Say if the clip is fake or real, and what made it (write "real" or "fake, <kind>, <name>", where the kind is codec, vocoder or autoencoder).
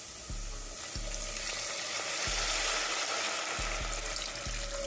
real